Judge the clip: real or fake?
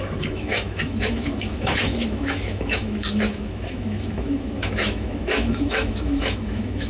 fake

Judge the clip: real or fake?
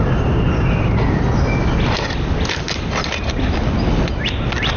real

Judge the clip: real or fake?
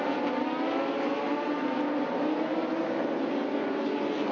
real